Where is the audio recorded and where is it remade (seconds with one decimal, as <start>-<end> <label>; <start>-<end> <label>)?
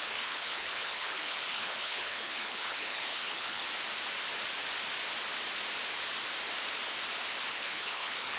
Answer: 0.0-3.6 remade; 3.6-7.5 recorded; 7.5-8.4 remade